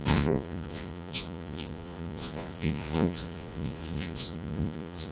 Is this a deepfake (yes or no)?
yes